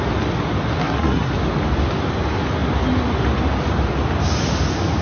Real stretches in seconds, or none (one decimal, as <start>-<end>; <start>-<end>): 0.0-0.8; 1.3-5.0